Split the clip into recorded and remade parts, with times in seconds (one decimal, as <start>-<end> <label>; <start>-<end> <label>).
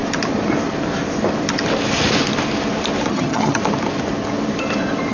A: 0.0-3.1 recorded; 3.1-3.6 remade; 3.6-5.1 recorded